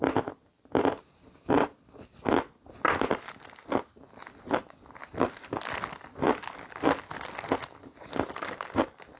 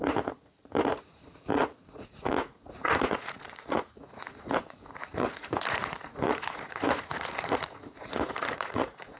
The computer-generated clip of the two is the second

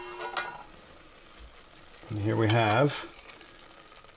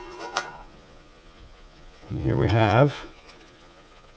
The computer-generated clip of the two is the second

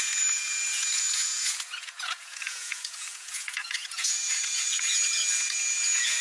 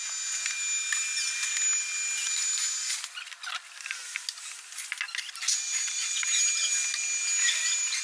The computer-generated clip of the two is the first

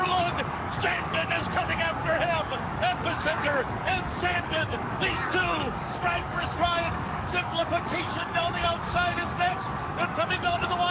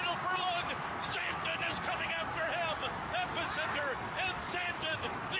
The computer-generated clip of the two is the first